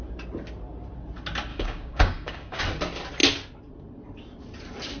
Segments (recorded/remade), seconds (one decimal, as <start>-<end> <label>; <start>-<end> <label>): 0.0-1.5 recorded; 1.5-2.6 remade; 2.6-5.0 recorded